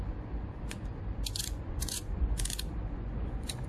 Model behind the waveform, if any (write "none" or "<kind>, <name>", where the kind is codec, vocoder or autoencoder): vocoder, Vocos